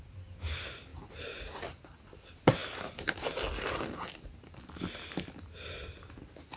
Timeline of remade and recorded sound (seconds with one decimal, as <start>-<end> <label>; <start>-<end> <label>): 0.0-6.6 recorded